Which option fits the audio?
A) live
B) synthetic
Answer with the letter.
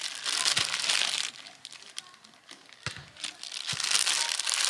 A